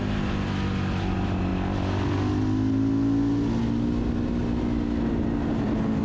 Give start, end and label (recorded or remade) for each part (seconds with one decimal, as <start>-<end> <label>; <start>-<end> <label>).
0.0-6.0 recorded